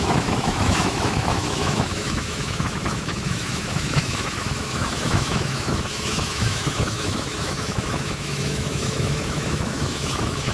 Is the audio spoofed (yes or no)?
yes